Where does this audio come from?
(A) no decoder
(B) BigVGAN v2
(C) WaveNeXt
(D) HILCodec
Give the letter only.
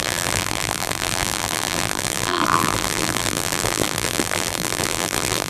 B